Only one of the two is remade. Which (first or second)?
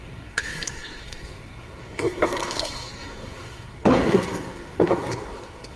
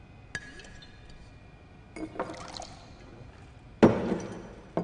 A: first